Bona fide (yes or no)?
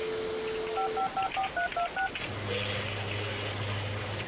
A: yes